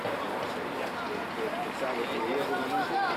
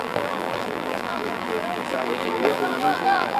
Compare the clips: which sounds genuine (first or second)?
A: first